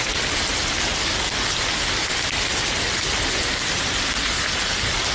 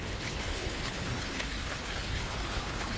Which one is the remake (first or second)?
second